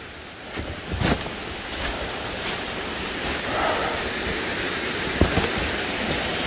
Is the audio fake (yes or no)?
no